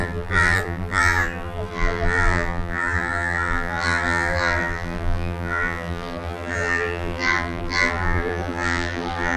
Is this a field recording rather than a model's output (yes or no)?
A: no